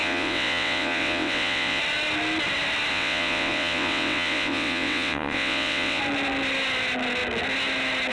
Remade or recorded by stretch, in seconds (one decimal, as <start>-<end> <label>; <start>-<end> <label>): 0.0-1.8 remade; 1.8-2.9 recorded; 2.9-6.0 remade; 6.0-8.1 recorded